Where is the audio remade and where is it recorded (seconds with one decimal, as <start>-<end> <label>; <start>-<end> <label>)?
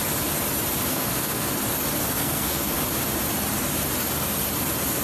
0.0-0.9 recorded; 0.9-1.5 remade; 1.5-2.0 recorded; 2.0-2.8 remade; 2.8-5.0 recorded